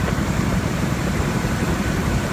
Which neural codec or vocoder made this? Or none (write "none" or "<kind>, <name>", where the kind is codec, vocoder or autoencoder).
vocoder, BigVGAN v2